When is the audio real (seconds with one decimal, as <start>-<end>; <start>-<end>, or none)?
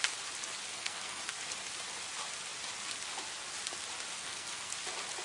0.0-0.7; 1.2-4.2; 4.7-5.2